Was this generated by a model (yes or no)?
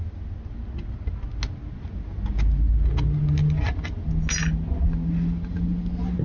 no